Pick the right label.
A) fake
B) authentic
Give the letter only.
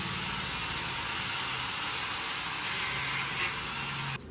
B